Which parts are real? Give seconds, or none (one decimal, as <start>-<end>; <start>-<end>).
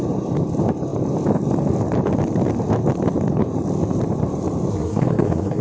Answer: 0.0-4.7